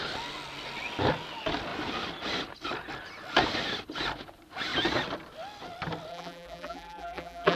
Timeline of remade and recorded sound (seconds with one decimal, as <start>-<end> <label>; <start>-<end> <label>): 0.0-6.1 recorded; 6.1-7.6 remade